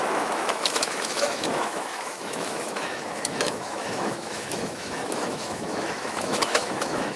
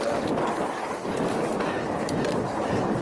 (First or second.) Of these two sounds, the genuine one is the second